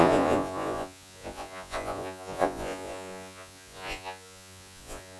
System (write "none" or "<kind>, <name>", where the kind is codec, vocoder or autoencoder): vocoder, Vocos